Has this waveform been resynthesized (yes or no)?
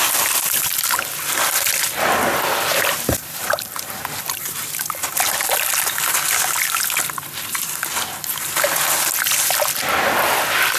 no